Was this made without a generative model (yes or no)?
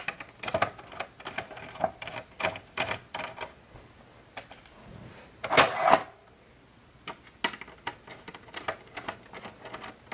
yes